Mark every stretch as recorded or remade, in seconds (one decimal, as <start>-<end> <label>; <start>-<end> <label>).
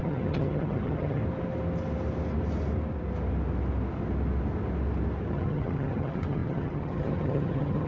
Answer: 0.0-1.2 remade; 1.2-5.3 recorded; 5.3-7.9 remade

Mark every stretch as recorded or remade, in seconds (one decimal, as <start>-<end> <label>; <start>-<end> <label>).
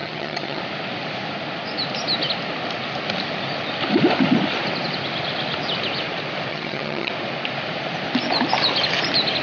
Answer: 0.0-0.6 remade; 0.6-6.5 recorded; 6.5-7.1 remade; 7.1-9.4 recorded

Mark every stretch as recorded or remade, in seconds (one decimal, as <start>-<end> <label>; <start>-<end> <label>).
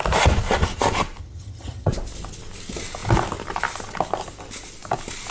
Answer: 0.0-1.2 recorded; 1.2-1.9 remade; 1.9-5.3 recorded